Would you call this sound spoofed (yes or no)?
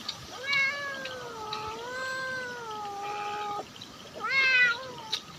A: no